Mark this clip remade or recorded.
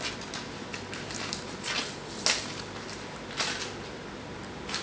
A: recorded